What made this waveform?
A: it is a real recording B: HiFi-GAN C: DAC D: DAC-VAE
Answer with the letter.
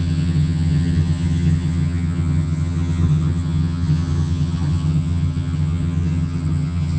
B